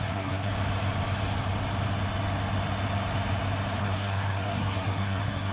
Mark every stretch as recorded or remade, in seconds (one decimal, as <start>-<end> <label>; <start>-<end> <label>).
0.0-0.5 remade; 0.5-3.8 recorded; 3.8-5.5 remade